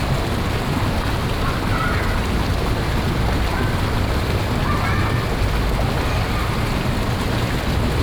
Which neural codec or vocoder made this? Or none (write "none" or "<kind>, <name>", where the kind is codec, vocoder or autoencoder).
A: none